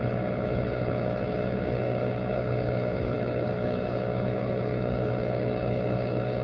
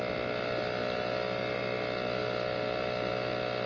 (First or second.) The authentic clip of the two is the second